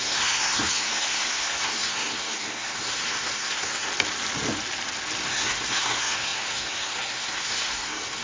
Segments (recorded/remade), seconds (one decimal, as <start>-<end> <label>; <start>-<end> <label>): 0.0-3.9 remade; 3.9-5.3 recorded; 5.3-8.2 remade